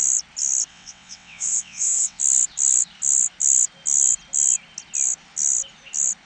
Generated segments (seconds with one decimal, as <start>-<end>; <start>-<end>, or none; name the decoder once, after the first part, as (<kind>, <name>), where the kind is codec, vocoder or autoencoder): 0.7-2.2 (vocoder, WaveNeXt)